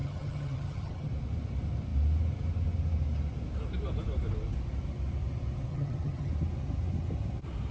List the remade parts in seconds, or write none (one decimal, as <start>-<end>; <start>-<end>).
0.0-1.1; 5.7-6.3